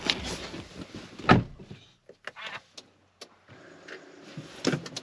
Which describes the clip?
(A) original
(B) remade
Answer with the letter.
A